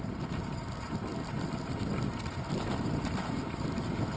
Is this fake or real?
real